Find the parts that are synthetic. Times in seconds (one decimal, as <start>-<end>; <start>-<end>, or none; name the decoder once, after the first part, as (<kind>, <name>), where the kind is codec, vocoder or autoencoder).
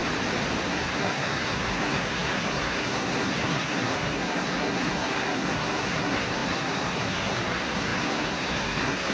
0.6-9.1 (codec, SNAC)